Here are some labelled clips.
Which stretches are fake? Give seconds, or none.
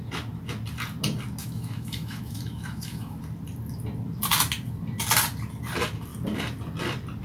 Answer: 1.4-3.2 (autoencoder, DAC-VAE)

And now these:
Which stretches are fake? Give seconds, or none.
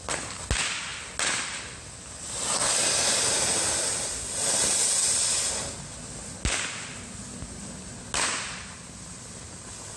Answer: none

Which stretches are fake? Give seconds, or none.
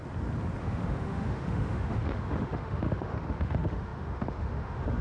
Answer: 0.6-5.0 (autoencoder, DAC-VAE)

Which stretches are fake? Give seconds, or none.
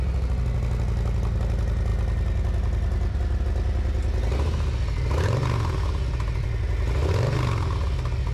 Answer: none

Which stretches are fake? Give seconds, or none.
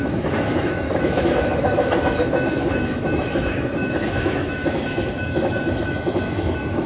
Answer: 0.0-4.6 (autoencoder, DAC-VAE); 5.1-6.9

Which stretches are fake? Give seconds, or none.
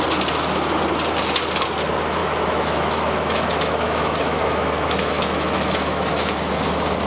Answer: 2.2-6.5 (autoencoder, DAC-VAE)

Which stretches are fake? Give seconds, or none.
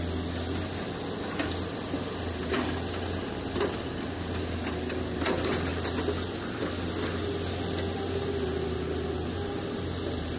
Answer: none